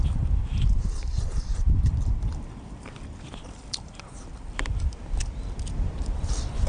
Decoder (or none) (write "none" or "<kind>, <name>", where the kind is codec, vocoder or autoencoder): vocoder, BigVGAN v2